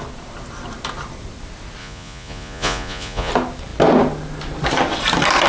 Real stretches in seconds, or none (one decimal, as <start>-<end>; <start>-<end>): 0.0-1.8; 3.3-5.5